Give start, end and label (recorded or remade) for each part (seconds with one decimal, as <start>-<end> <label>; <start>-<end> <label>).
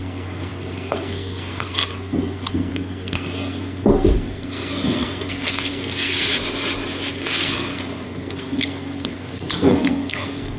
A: 0.0-6.3 remade; 6.3-7.1 recorded; 7.1-10.6 remade